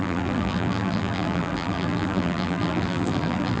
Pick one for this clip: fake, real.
fake